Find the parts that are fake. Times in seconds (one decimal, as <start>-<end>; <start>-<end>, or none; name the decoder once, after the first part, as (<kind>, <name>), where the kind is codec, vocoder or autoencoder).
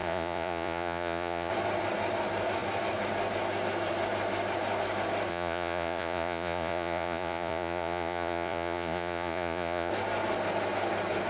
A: 0.0-1.5 (vocoder, Vocos); 5.3-9.9